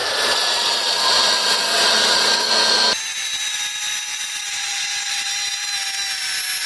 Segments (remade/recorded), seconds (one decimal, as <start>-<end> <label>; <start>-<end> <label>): 0.0-2.5 remade; 2.5-4.1 recorded; 4.1-5.3 remade; 5.3-6.7 recorded